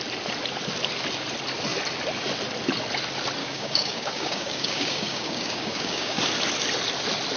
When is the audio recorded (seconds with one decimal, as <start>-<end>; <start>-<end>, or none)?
0.0-3.4; 6.2-7.4